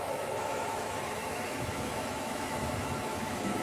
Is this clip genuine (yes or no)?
no